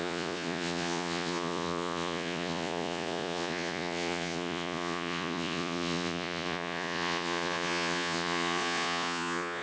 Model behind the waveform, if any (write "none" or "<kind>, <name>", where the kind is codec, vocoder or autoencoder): vocoder, Vocos